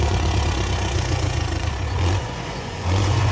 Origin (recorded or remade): remade